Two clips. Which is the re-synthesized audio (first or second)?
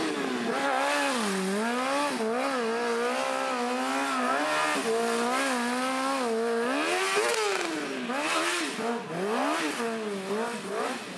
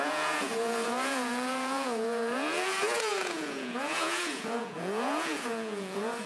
second